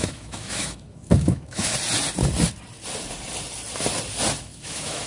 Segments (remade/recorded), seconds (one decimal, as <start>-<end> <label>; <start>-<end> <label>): 0.0-1.7 remade; 1.7-4.4 recorded; 4.4-5.1 remade